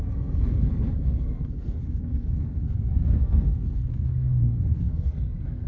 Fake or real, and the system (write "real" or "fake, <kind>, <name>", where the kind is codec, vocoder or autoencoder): fake, codec, SNAC